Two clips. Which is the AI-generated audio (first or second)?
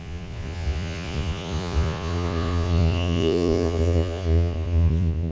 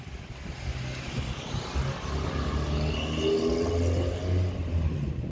first